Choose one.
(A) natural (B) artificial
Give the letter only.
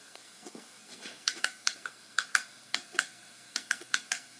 B